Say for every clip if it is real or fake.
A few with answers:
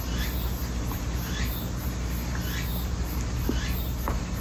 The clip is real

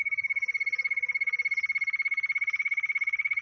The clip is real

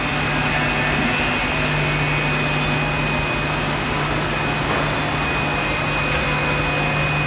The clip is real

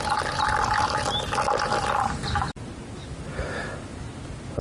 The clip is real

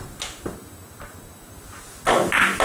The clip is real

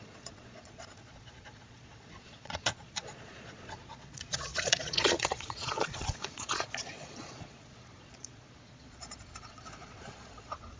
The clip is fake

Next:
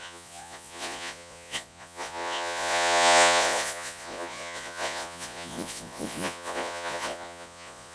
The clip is fake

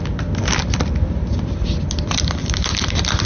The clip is real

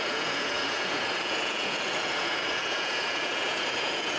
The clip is fake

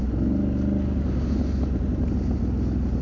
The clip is real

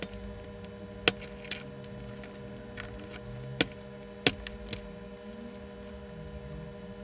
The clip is real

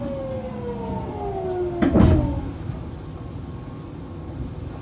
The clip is real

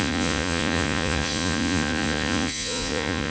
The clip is fake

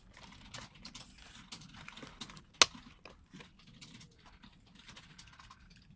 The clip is real